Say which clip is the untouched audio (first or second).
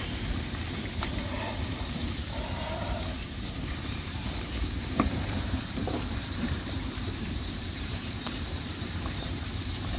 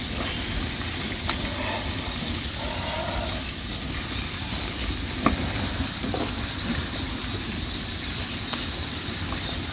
second